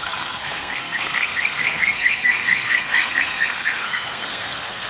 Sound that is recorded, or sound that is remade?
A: remade